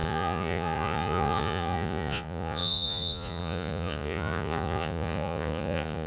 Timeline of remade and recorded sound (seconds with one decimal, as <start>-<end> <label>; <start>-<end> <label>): 0.0-6.1 remade